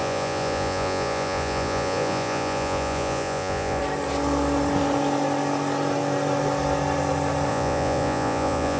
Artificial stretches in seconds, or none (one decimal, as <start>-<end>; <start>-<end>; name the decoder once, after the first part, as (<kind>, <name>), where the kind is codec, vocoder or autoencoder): 0.0-3.8 (vocoder, Vocos); 7.5-8.8